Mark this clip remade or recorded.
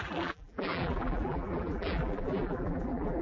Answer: remade